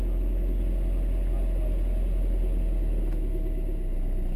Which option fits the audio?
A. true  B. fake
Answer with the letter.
A